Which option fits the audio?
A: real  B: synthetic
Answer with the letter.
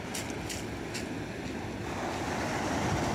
A